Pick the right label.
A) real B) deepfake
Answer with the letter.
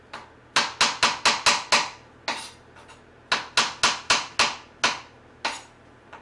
A